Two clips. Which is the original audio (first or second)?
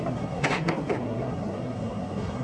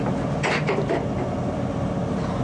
second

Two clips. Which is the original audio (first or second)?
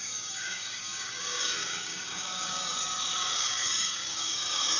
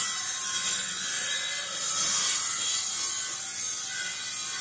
second